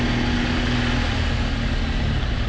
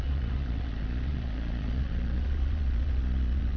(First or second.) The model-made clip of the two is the second